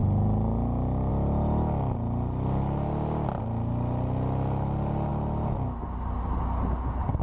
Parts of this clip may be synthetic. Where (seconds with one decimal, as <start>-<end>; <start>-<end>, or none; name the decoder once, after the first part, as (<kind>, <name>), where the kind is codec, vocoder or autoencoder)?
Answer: none